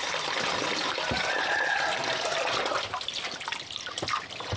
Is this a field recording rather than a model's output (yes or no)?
yes